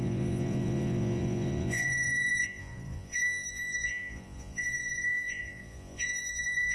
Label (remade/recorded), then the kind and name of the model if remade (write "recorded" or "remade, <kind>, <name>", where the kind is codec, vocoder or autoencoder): remade, vocoder, Vocos